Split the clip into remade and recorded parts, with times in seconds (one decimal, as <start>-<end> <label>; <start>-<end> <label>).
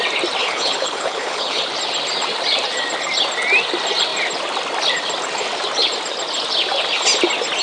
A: 0.0-0.4 recorded; 0.4-1.6 remade; 1.6-7.6 recorded